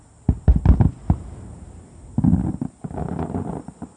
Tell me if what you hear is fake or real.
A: real